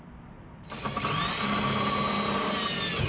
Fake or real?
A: real